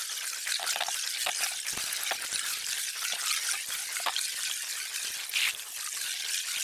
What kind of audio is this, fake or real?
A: real